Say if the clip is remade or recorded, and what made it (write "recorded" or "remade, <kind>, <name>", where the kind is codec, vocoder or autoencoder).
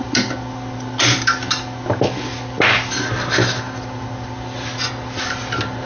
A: recorded